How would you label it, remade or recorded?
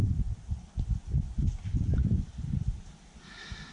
recorded